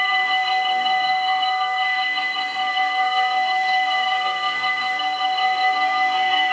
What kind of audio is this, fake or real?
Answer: fake